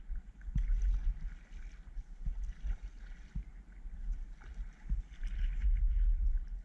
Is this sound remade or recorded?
recorded